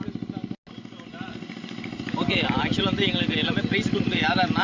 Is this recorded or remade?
recorded